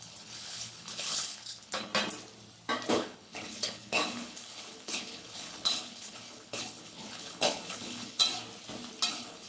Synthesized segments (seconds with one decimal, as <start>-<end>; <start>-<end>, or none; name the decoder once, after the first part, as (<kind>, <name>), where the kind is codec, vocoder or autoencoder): 0.0-1.9 (codec, HILCodec); 2.9-8.2; 9.1-9.5